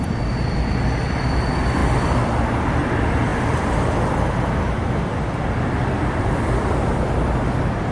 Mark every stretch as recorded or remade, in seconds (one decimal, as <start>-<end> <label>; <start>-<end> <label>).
0.0-7.9 recorded